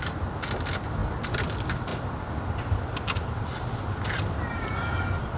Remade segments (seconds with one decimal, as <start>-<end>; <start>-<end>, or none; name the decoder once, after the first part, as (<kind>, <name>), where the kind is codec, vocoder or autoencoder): none